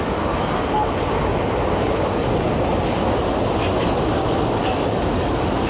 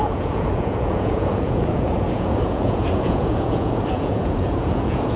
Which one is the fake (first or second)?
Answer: second